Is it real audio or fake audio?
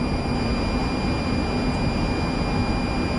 real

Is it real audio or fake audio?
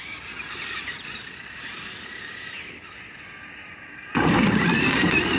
real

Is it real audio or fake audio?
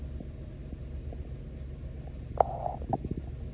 real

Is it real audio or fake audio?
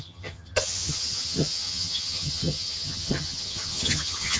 fake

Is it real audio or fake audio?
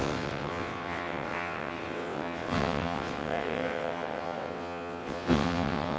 fake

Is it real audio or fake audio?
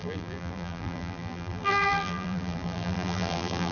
fake